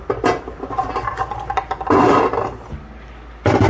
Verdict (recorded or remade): recorded